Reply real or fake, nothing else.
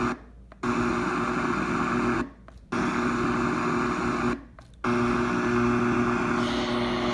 real